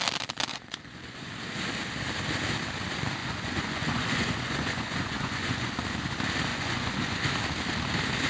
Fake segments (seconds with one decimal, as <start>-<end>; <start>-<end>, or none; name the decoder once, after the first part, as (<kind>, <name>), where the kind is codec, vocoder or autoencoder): 0.5-1.3 (vocoder, Vocos); 3.2-5.7; 6.5-7.3